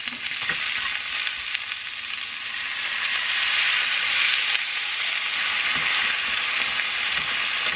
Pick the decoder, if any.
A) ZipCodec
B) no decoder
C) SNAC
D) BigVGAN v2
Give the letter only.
B